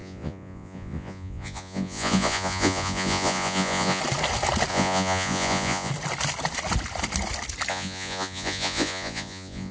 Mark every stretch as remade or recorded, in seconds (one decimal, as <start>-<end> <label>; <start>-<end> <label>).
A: 0.0-4.0 remade; 4.0-4.7 recorded; 4.7-5.9 remade; 5.9-7.7 recorded; 7.7-9.7 remade